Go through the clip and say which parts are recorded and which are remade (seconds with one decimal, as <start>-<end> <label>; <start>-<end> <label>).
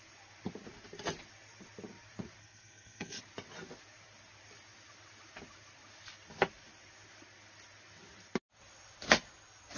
0.0-2.4 recorded; 2.4-3.2 remade; 3.2-9.8 recorded